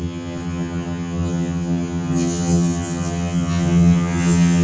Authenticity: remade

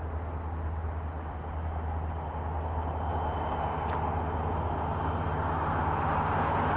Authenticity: recorded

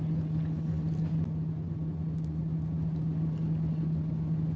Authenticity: recorded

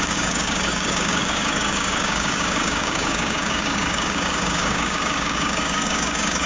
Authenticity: remade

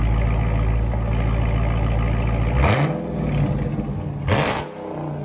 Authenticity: recorded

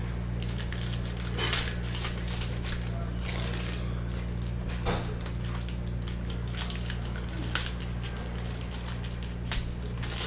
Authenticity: recorded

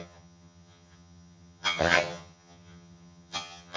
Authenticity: remade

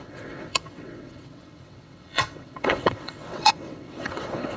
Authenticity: remade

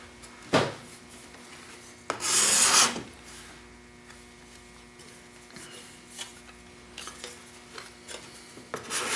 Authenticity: recorded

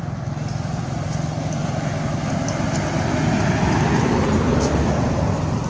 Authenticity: recorded